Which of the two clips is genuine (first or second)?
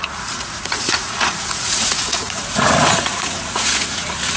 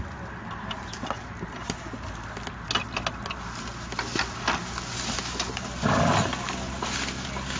second